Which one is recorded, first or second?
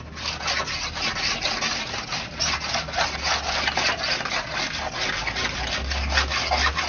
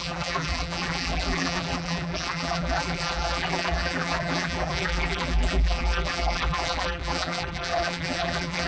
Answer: first